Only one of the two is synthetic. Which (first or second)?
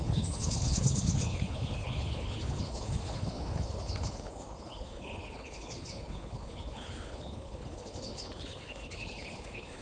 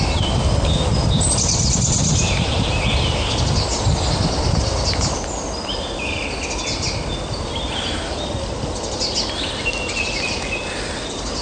first